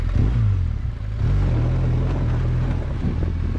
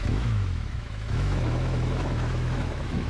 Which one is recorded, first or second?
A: first